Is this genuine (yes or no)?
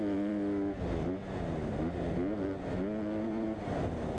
yes